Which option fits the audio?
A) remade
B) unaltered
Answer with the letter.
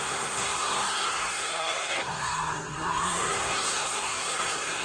A